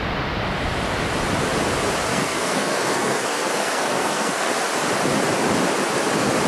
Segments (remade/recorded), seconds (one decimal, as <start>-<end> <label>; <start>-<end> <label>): 0.0-2.1 recorded; 2.1-4.5 remade; 4.5-6.5 recorded